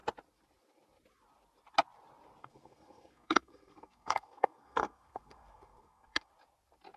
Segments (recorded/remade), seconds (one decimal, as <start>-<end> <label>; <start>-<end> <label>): 0.0-2.4 recorded; 2.4-6.3 remade; 6.3-7.0 recorded